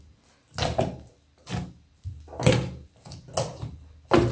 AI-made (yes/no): no